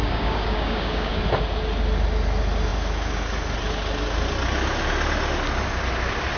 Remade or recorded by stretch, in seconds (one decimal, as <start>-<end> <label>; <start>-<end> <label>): 0.0-1.2 remade; 1.2-6.4 recorded